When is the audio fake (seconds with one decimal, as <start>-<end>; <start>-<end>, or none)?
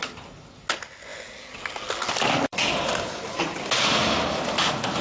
none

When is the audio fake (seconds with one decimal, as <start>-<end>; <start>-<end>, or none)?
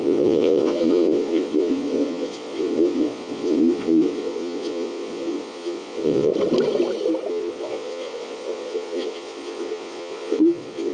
0.0-6.3; 7.3-10.9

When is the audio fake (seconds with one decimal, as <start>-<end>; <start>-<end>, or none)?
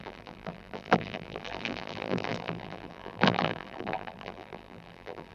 0.0-5.3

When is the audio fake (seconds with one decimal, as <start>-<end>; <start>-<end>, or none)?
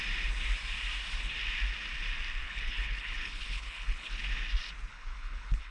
2.4-4.2; 4.9-5.7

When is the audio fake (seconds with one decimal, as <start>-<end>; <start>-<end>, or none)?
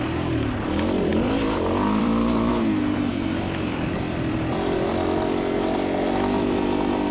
1.1-2.5; 3.1-4.9